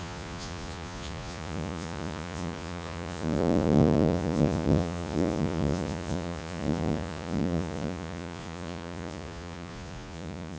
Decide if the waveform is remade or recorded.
remade